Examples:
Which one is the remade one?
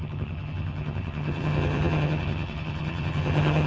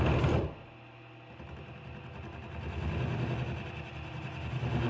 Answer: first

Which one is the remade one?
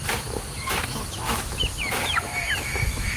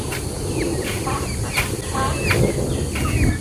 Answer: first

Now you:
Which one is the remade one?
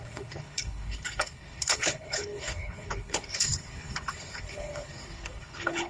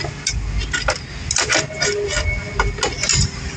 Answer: first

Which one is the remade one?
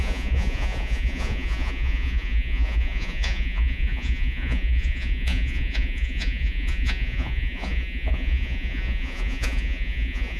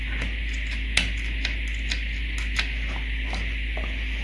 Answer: first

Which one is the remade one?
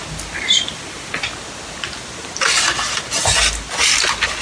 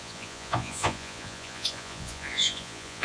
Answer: second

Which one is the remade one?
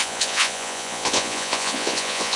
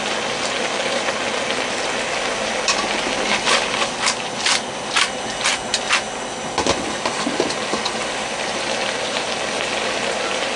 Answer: first